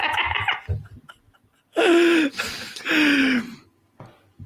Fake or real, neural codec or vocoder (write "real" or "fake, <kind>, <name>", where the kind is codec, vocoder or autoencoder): real